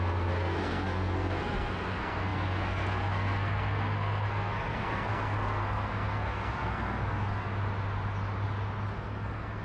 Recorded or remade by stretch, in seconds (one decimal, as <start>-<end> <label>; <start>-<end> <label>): 0.0-7.5 remade; 7.5-8.9 recorded; 8.9-9.6 remade